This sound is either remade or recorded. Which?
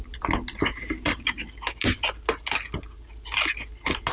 recorded